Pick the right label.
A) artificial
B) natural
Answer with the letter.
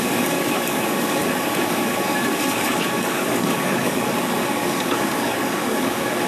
A